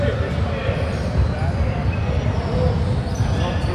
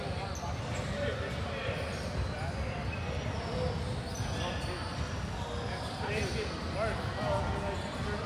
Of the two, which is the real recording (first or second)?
second